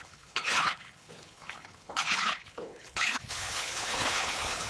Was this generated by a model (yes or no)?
yes